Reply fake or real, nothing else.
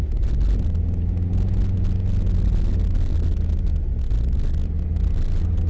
real